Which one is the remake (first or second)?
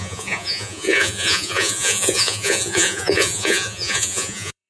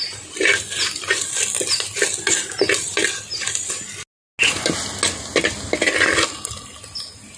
first